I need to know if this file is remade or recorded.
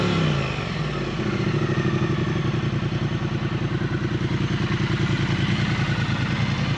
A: recorded